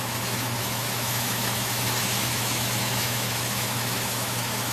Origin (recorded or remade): remade